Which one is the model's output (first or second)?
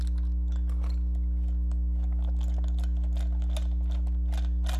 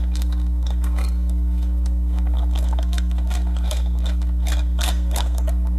second